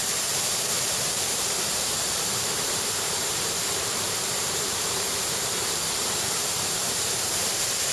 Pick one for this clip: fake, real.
fake